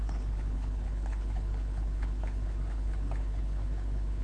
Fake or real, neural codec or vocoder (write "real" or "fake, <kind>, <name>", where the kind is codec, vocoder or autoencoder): fake, codec, HILCodec